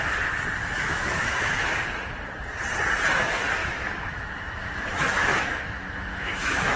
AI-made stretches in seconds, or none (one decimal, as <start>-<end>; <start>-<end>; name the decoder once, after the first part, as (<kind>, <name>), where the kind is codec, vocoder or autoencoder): 0.6-1.5 (autoencoder, DAC-VAE); 3.6-6.8